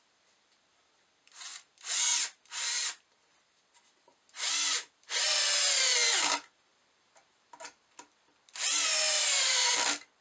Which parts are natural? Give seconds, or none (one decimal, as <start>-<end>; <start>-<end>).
0.0-4.1; 5.1-6.7